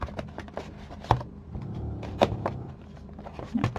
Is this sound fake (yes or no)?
yes